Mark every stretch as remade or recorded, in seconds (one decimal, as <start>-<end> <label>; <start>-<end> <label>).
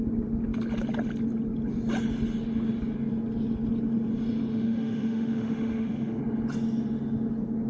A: 0.0-4.5 recorded; 4.5-6.2 remade; 6.2-7.7 recorded